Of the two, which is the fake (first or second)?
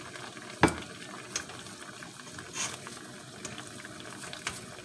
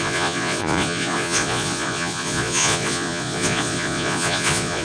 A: second